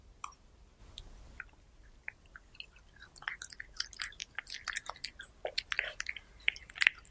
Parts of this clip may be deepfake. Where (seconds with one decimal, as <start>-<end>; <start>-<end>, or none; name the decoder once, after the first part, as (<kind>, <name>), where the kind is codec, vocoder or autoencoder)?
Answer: none